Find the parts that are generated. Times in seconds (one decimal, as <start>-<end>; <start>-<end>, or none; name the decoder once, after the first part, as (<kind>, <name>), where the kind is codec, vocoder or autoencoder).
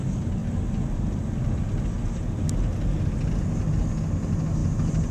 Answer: none